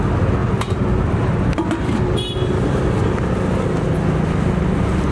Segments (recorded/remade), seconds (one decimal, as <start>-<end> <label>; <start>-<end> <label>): 0.0-0.4 recorded; 0.4-3.0 remade; 3.0-5.1 recorded